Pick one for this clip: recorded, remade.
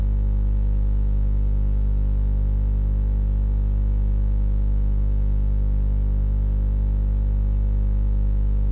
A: recorded